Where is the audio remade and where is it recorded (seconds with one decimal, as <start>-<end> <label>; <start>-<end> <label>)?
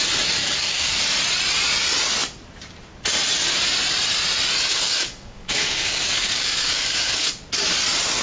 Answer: 0.0-0.4 recorded; 0.4-1.0 remade; 1.0-4.7 recorded; 4.7-7.3 remade; 7.3-8.2 recorded